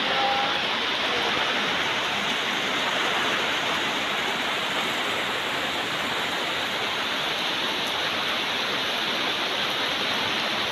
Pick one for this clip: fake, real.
real